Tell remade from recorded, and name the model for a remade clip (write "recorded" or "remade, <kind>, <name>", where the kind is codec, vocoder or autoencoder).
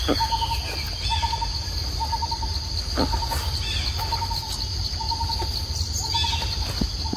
recorded